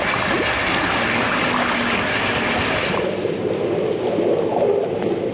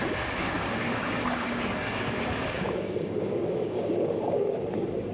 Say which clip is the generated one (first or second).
second